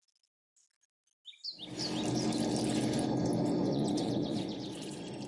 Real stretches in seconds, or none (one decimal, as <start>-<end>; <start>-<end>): 0.0-3.6